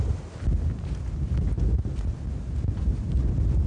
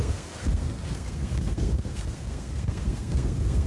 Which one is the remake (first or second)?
second